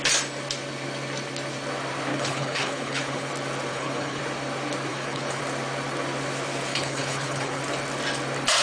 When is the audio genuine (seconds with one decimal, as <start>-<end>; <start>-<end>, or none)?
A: 0.0-2.1; 3.3-3.7; 4.2-4.9; 5.4-6.7; 7.6-8.6